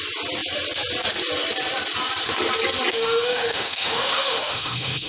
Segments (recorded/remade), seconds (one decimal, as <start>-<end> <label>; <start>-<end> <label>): 0.0-2.9 recorded; 2.9-5.1 remade